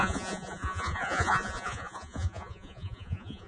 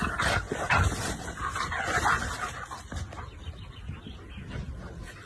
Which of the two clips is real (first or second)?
second